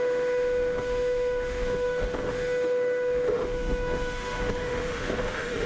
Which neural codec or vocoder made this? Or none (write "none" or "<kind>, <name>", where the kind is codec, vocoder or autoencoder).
autoencoder, DAC-VAE